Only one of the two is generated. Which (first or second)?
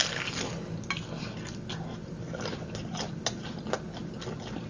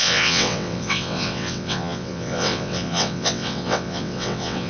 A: second